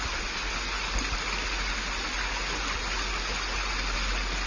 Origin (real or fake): real